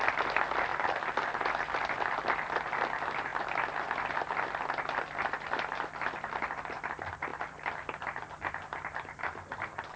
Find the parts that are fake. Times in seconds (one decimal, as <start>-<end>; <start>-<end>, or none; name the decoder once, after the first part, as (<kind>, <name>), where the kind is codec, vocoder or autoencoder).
none